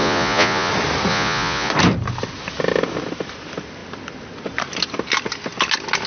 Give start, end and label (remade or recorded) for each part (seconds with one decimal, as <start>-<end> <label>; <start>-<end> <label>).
0.0-0.7 remade; 0.7-1.1 recorded; 1.1-1.7 remade; 1.7-6.1 recorded

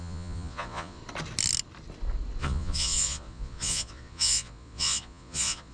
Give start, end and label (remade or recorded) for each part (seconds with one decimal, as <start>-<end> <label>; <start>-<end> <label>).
0.0-1.0 remade; 1.0-2.4 recorded; 2.4-5.7 remade